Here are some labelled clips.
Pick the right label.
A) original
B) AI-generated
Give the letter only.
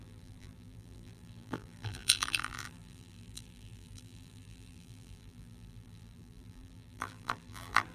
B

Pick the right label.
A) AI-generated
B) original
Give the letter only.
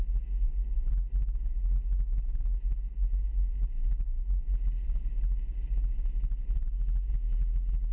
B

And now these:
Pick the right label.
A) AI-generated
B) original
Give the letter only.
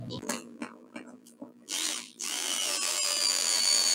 A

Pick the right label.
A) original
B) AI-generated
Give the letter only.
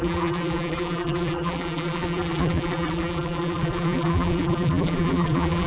B